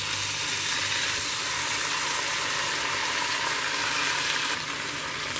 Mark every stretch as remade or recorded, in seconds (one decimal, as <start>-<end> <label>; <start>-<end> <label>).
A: 0.0-5.4 recorded

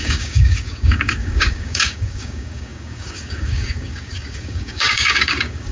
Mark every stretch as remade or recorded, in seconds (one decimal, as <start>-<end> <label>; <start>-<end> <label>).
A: 0.0-5.7 remade